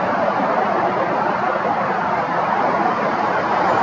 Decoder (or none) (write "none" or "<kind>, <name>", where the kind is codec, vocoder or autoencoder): none